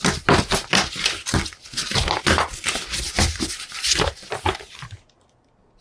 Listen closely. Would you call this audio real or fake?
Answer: real